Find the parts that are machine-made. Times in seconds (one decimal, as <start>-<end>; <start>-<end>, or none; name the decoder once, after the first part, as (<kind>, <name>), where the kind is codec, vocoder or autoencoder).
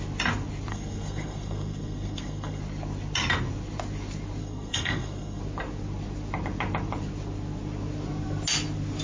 0.7-2.6 (codec, SNAC); 4.4-5.4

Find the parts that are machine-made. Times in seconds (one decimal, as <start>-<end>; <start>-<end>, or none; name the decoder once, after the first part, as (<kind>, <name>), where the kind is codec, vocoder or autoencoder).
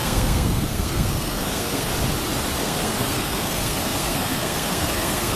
0.0-1.9 (codec, SNAC); 2.6-5.4